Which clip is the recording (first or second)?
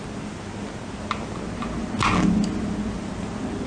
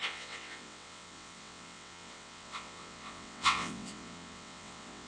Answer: first